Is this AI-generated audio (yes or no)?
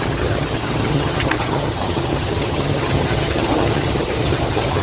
yes